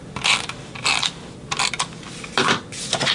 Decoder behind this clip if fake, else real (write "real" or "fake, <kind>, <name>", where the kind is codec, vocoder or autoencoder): real